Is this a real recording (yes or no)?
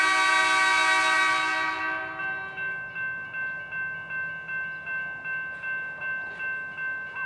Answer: yes